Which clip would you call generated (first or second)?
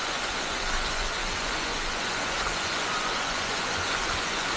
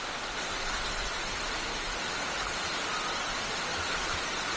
first